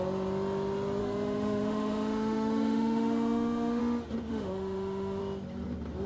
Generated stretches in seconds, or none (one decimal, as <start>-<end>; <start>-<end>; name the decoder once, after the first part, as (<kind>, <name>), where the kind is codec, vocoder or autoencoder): 1.0-3.8 (autoencoder, DAC-VAE); 4.3-5.2